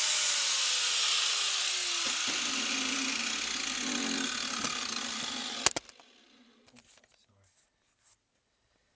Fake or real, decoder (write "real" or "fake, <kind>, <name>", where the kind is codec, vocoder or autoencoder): real